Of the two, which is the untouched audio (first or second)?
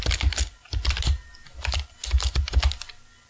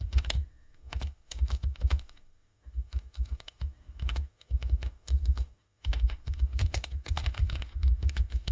first